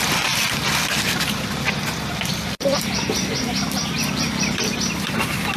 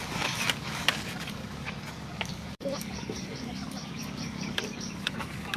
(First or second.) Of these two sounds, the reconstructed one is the second